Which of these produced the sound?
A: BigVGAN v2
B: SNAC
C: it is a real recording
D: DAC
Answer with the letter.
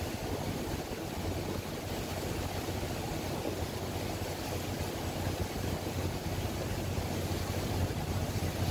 C